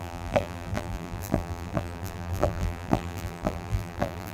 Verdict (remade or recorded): remade